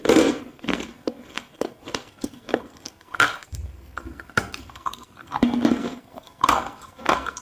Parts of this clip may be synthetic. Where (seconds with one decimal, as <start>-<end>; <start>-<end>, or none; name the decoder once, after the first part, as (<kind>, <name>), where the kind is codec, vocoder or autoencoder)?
0.0-7.4 (codec, SNAC)